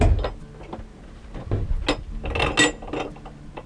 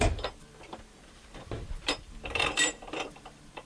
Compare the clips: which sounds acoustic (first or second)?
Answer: first